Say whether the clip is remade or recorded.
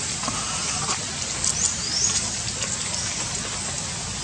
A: recorded